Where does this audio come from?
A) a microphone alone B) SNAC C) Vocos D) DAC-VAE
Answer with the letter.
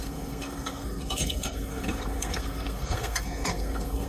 B